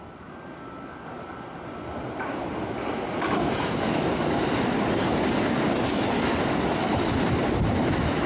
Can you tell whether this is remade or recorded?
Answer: recorded